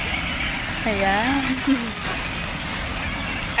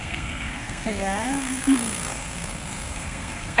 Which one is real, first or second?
first